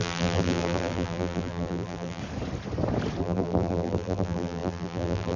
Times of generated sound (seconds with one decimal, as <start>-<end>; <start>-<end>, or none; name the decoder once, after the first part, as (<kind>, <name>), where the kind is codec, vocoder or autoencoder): 0.0-2.2 (vocoder, BigVGAN v2); 3.2-5.4